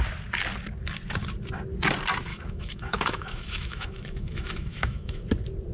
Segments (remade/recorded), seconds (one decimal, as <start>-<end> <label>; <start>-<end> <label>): 0.0-2.3 recorded; 2.3-5.2 remade; 5.2-5.7 recorded